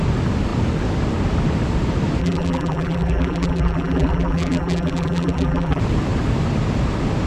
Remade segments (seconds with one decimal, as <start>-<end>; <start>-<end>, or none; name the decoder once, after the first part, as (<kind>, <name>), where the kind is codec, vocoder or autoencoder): 2.2-5.8 (vocoder, BigVGAN v2)